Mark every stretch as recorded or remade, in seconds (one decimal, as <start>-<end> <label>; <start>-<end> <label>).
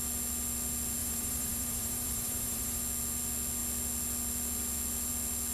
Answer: 0.0-1.0 recorded; 1.0-2.8 remade; 2.8-5.5 recorded